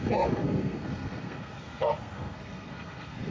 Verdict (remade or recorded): remade